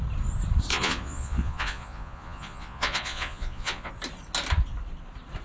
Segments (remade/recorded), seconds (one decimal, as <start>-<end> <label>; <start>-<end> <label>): 0.0-0.7 recorded; 0.7-3.9 remade; 3.9-5.4 recorded